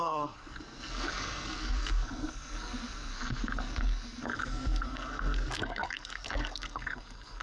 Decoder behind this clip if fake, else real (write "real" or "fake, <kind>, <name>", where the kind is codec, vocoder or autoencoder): fake, codec, SNAC